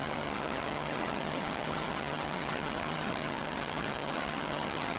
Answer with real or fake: fake